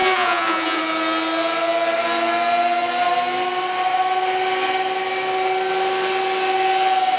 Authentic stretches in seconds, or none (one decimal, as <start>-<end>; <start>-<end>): 0.8-7.2